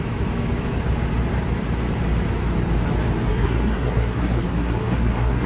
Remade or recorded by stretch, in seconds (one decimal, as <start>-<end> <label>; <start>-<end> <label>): 0.0-3.3 recorded; 3.3-5.5 remade